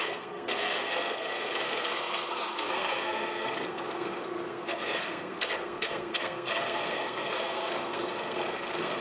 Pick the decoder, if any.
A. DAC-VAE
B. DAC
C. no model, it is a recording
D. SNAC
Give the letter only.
D